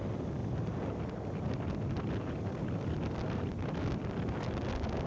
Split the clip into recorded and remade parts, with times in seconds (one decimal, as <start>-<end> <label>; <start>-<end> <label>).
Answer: 0.0-5.1 recorded